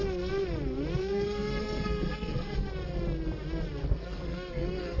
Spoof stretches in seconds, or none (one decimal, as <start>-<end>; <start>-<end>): 1.0-2.7; 3.8-5.0